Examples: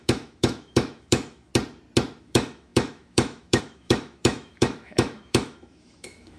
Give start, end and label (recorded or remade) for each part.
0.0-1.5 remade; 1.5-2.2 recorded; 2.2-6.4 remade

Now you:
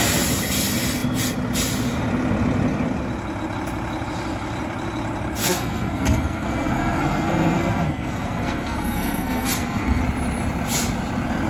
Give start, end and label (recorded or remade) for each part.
0.0-5.4 recorded; 5.4-10.0 remade; 10.0-11.5 recorded

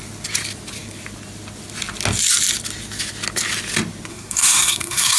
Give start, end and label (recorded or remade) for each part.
0.0-4.1 recorded; 4.1-5.2 remade

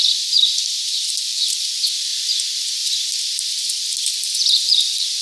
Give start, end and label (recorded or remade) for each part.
0.0-1.0 recorded; 1.0-2.1 remade; 2.1-3.2 recorded; 3.2-5.2 remade

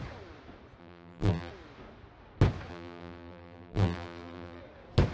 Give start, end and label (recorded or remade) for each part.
0.0-0.8 recorded; 0.8-1.5 remade; 1.5-2.7 recorded; 2.7-4.6 remade; 4.6-5.1 recorded

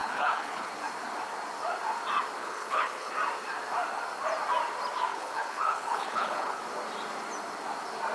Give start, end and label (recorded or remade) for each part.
0.0-0.7 remade; 0.7-2.4 recorded; 2.4-3.1 remade; 3.1-5.1 recorded; 5.1-6.6 remade; 6.6-8.1 recorded